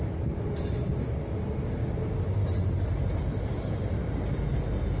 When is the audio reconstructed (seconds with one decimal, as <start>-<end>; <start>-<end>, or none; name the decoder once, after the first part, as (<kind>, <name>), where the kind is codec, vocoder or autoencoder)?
none